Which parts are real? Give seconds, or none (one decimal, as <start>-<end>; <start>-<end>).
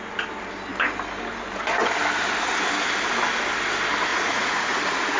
0.0-4.1